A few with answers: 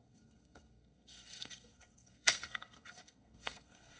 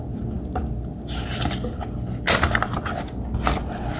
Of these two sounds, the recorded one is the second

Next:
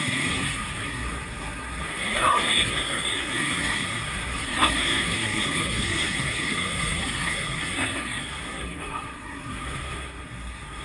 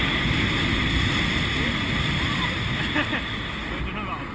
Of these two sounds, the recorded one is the second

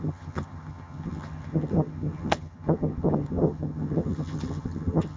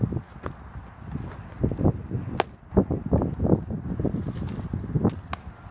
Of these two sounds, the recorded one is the second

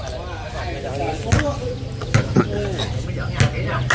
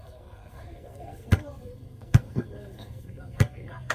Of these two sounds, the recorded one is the first